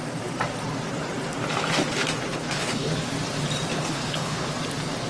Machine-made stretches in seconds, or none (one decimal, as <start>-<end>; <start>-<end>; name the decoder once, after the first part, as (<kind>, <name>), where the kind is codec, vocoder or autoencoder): 2.3-3.1 (codec, HILCodec); 3.7-4.5